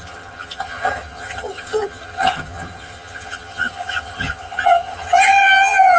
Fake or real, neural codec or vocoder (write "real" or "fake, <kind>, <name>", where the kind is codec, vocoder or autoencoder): fake, vocoder, HiFi-GAN